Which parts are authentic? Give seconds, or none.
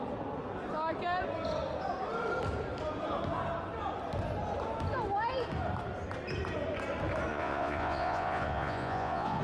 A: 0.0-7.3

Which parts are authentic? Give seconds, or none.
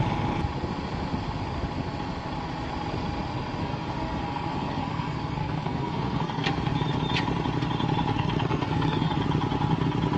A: 0.0-3.6; 6.8-8.1; 9.1-10.2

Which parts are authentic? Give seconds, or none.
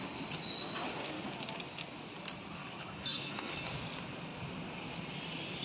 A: 0.0-2.6; 3.5-5.6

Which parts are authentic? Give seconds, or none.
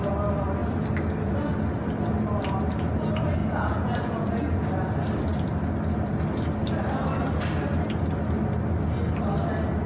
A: 0.0-3.4; 4.7-9.9